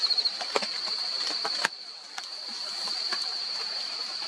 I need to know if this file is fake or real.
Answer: fake